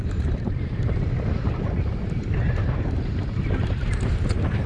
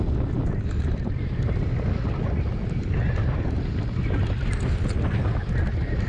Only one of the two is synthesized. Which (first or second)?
first